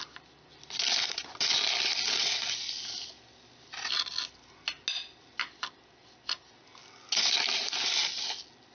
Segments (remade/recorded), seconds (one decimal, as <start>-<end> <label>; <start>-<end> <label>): 0.0-8.7 recorded